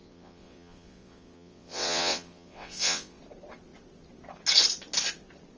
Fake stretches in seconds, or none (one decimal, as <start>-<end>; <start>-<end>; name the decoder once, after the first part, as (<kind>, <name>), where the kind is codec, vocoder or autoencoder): 0.0-3.2 (vocoder, WaveNeXt)